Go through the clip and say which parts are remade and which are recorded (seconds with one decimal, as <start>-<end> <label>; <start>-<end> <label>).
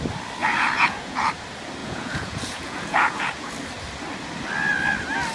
0.0-0.4 recorded; 0.4-1.3 remade; 1.3-1.8 recorded; 1.8-3.5 remade; 3.5-5.3 recorded